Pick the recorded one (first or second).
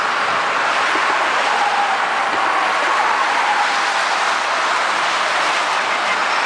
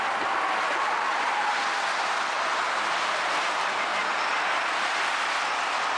second